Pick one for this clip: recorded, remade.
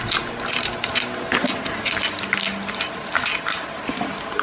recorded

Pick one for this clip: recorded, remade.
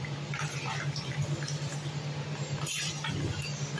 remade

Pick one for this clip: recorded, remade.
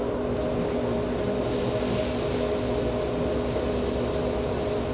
recorded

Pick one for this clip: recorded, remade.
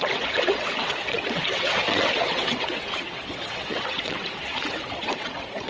remade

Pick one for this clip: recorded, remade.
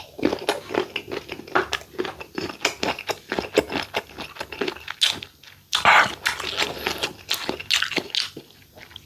recorded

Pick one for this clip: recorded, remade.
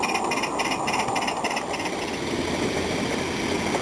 recorded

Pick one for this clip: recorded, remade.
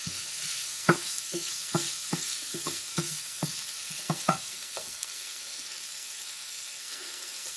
remade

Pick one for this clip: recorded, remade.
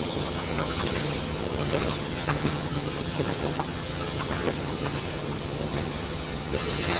remade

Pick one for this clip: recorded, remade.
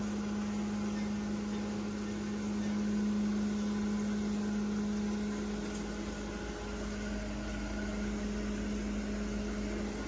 recorded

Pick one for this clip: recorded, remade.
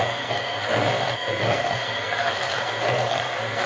remade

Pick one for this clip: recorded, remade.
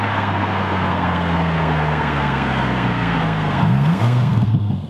remade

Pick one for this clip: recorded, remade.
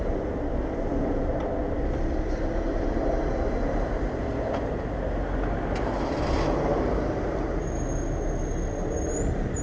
recorded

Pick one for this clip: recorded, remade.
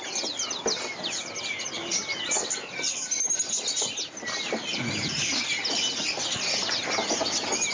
recorded